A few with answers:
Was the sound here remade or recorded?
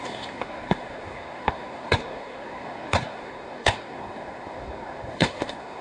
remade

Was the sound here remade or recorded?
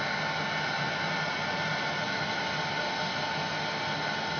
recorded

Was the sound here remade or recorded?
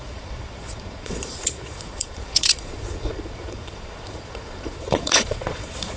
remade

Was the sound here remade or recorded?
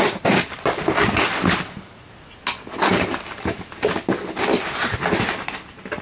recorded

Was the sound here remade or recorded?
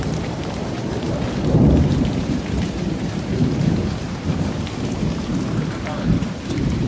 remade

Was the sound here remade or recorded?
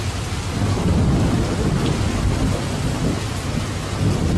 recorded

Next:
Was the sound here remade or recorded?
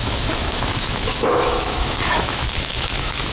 remade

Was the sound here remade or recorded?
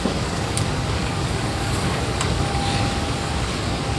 remade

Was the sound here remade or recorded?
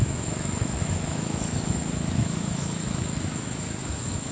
remade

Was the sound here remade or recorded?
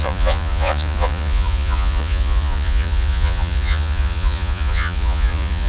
remade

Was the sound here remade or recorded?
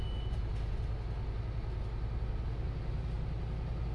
recorded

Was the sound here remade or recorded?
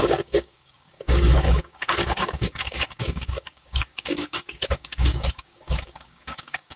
remade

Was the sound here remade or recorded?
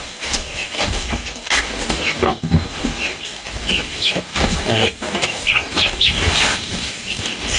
remade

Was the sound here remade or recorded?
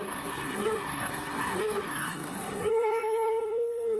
remade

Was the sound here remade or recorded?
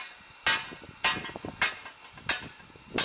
recorded